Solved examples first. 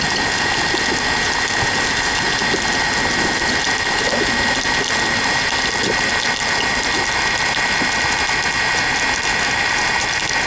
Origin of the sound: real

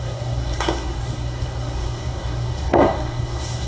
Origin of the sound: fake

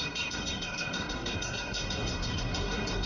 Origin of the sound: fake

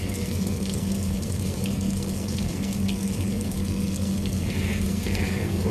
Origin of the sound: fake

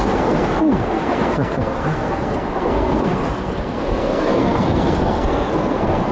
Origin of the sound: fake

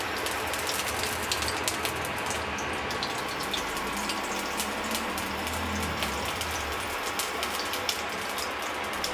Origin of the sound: real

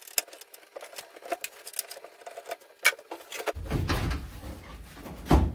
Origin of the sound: real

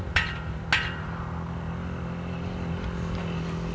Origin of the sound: real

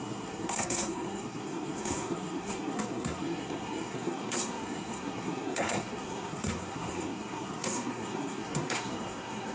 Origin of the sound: fake